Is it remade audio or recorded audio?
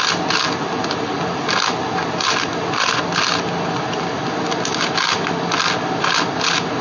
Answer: recorded